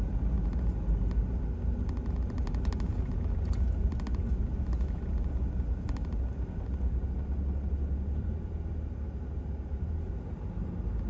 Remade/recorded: recorded